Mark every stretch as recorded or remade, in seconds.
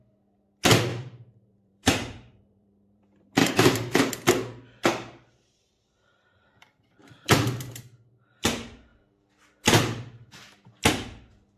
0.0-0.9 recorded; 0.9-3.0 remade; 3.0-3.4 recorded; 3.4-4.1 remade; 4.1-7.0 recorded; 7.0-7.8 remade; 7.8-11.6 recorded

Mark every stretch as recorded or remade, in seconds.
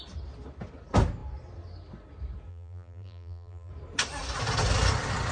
0.0-2.5 recorded; 2.5-3.7 remade; 3.7-5.3 recorded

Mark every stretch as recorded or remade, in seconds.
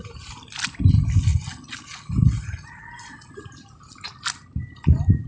0.0-5.3 recorded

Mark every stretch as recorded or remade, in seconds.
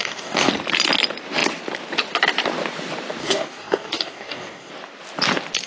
0.0-0.5 remade; 0.5-3.2 recorded; 3.2-4.7 remade; 4.7-5.7 recorded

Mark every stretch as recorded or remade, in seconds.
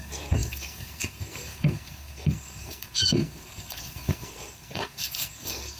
0.0-5.8 remade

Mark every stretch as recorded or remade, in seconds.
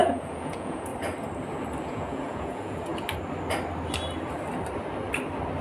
0.0-0.9 remade; 0.9-1.8 recorded; 1.8-2.9 remade; 2.9-5.6 recorded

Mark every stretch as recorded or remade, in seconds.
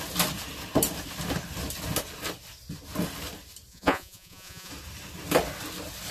0.0-3.7 recorded; 3.7-4.7 remade; 4.7-6.1 recorded